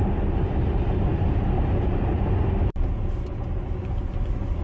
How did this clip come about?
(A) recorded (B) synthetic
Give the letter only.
A